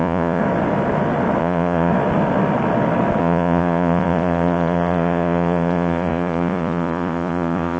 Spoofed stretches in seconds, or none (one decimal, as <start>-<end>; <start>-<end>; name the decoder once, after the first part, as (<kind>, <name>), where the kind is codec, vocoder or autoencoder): 0.0-0.4 (vocoder, Vocos); 1.4-1.9; 3.2-7.8